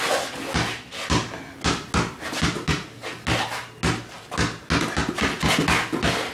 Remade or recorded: recorded